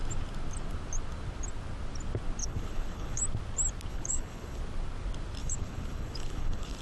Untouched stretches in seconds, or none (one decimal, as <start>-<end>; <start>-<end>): 0.0-2.4; 3.2-3.9; 4.6-5.4